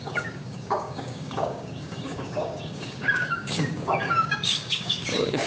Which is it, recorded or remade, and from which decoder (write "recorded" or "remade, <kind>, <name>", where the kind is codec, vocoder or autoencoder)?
remade, codec, DAC